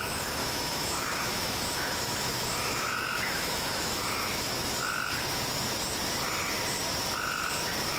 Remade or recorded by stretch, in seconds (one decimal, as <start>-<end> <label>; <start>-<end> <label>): 0.0-0.4 recorded; 0.4-4.9 remade; 4.9-8.0 recorded